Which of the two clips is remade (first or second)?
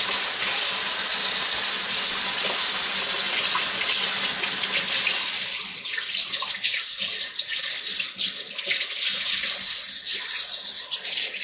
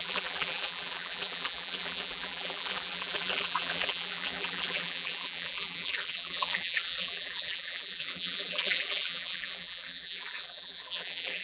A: second